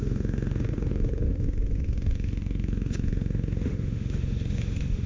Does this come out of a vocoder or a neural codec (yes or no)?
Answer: yes